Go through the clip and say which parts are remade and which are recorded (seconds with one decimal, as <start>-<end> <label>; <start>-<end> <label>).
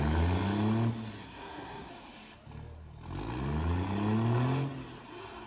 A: 0.0-1.2 recorded; 1.2-1.9 remade; 1.9-5.5 recorded